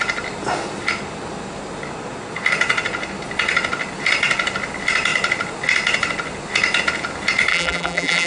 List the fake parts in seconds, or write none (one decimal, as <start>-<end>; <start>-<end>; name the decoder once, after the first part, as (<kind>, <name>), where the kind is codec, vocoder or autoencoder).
7.5-8.3 (vocoder, BigVGAN v2)